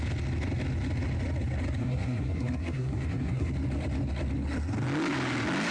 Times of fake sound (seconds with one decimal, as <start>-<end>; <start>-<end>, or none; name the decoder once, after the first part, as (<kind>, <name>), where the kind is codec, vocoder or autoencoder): 1.8-3.5 (codec, SNAC)